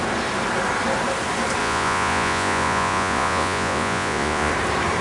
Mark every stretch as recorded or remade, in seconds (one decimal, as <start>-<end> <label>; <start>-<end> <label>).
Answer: 0.0-1.6 recorded; 1.6-4.5 remade; 4.5-5.0 recorded